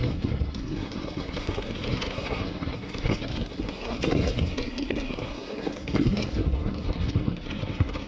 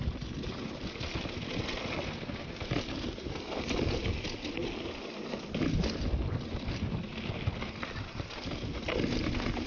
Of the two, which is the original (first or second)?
second